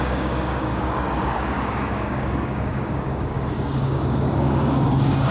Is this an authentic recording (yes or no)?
no